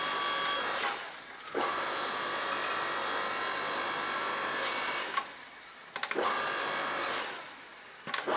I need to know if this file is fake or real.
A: real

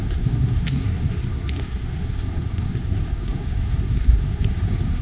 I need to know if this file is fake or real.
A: fake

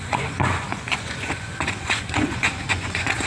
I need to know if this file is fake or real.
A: fake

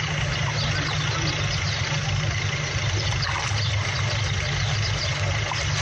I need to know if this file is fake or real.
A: real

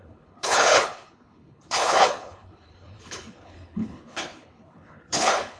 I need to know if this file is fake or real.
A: fake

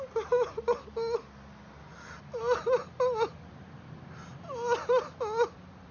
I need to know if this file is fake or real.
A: real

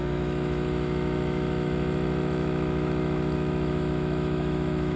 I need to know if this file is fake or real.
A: fake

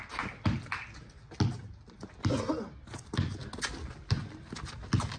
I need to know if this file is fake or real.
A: real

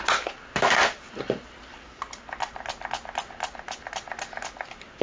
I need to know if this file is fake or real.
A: real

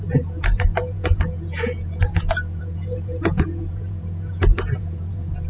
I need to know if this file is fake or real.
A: fake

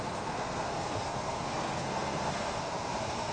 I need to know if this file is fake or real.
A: fake